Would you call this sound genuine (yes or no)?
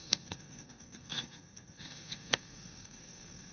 no